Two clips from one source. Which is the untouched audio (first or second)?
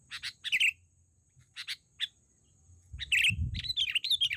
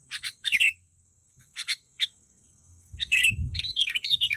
first